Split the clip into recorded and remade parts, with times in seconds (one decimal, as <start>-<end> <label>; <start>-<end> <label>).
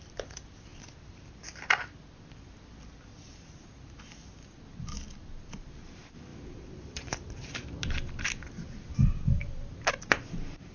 0.0-6.3 recorded; 6.3-9.9 remade; 9.9-10.7 recorded